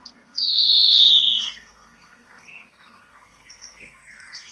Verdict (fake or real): fake